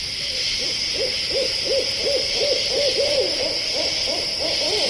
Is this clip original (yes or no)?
no